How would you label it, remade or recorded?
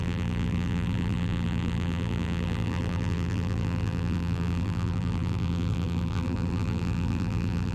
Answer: remade